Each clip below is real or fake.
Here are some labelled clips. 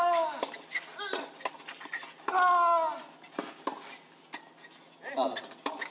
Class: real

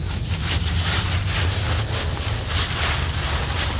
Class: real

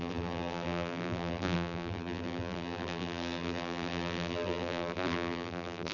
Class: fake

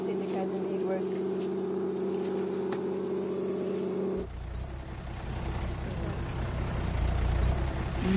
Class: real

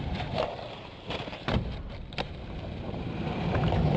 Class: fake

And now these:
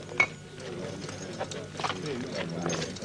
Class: real